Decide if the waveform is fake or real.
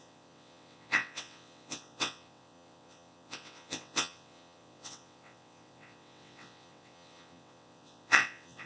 fake